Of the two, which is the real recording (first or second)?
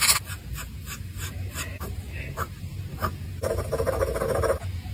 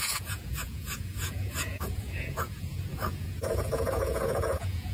first